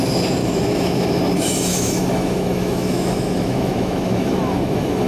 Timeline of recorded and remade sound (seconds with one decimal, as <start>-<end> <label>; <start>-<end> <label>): 0.0-0.4 recorded; 0.4-1.2 remade; 1.2-1.7 recorded; 1.7-5.1 remade